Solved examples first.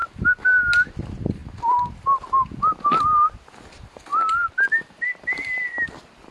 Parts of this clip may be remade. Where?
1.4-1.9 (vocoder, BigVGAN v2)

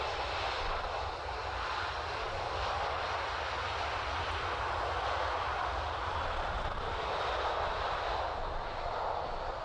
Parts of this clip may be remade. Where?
none

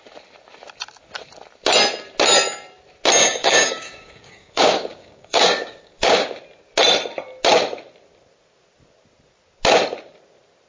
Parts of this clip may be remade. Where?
3.2-6.4 (codec, DAC)